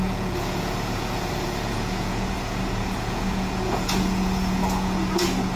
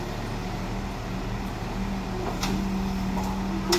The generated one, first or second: first